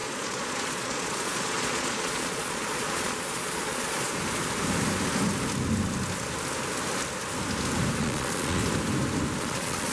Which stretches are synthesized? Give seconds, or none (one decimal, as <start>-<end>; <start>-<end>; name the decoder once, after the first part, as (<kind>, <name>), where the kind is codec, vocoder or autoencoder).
0.0-4.1 (vocoder, Vocos); 8.0-8.6; 9.4-9.9

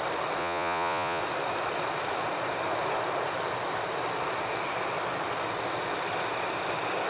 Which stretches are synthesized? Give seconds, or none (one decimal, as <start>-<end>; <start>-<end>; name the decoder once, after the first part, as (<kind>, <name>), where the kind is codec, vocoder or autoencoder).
0.4-1.2 (vocoder, Vocos)

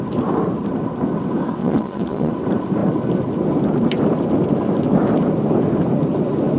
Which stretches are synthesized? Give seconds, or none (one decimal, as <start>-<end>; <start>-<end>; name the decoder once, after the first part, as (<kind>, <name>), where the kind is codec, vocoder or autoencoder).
1.6-2.3 (vocoder, Vocos)